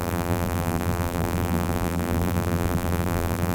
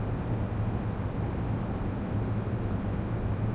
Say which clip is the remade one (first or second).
first